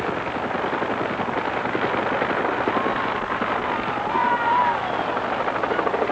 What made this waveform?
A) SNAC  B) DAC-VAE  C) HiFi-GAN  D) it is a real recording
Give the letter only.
D